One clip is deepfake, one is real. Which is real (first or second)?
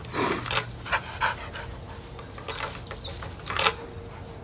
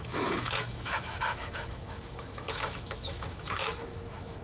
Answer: first